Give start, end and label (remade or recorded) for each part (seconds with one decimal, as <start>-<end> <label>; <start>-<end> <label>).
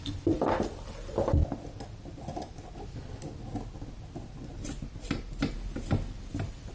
0.0-1.4 remade; 1.4-5.4 recorded; 5.4-6.7 remade